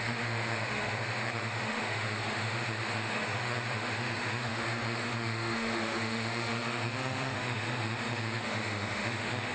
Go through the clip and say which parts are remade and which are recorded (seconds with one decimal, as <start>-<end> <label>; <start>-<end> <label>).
0.0-9.5 remade